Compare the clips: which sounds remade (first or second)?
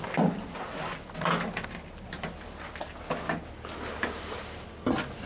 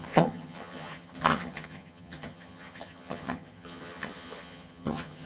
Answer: second